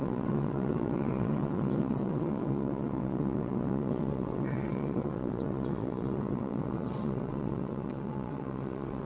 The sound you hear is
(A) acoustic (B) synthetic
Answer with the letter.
B